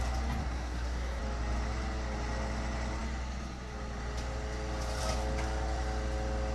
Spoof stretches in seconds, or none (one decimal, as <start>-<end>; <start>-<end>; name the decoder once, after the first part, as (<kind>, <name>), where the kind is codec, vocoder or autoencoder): 0.4-1.2 (codec, SNAC)